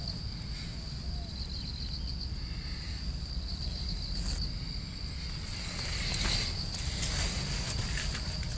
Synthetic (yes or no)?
no